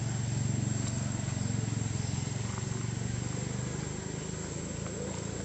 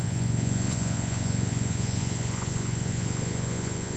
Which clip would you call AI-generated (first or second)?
second